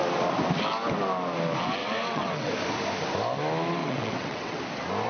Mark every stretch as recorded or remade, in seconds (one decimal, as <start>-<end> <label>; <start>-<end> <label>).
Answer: 0.0-1.8 recorded; 1.8-2.5 remade; 2.5-3.8 recorded; 3.8-4.6 remade; 4.6-5.1 recorded